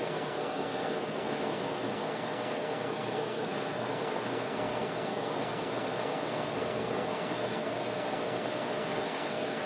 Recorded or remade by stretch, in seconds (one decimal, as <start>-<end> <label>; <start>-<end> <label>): 0.0-9.7 remade